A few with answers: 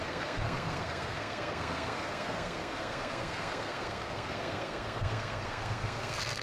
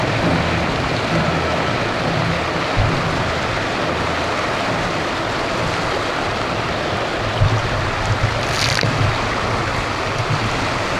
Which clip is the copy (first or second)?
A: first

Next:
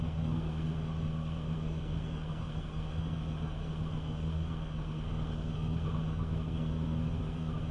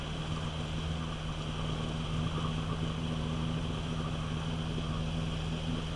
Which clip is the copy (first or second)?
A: first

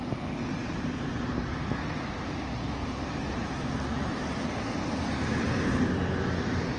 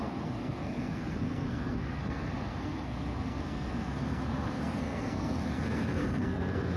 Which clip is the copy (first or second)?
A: second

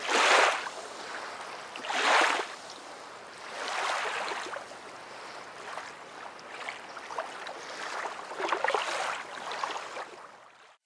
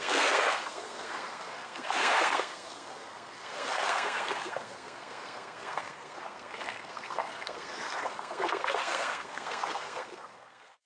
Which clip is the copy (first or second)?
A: second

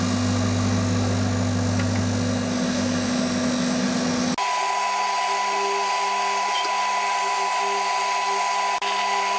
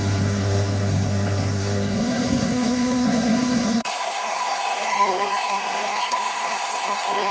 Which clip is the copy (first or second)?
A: second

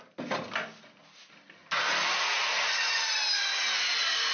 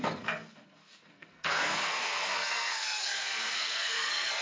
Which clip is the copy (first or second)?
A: second